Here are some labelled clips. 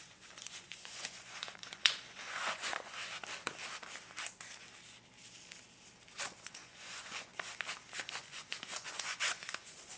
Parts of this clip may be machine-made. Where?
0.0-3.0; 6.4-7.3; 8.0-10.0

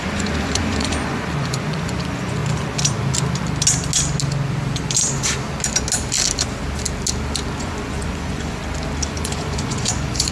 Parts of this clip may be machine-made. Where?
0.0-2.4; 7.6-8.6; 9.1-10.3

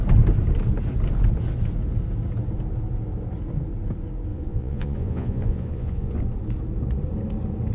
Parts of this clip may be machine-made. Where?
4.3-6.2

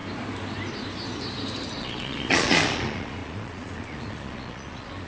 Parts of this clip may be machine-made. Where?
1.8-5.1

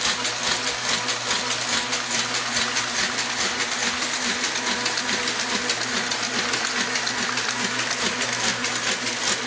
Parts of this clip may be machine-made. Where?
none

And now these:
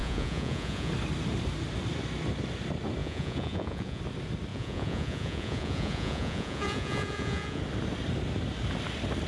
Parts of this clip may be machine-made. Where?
0.0-0.9; 3.0-4.0; 4.5-7.6

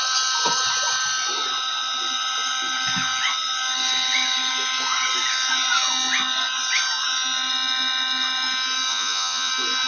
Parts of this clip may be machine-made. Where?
8.9-9.5

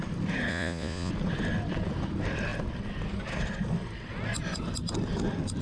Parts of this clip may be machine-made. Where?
0.5-1.1